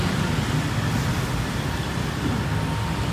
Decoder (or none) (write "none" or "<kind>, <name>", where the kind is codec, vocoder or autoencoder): none